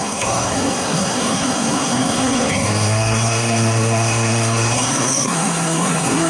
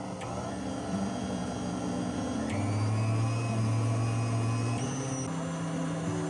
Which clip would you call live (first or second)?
second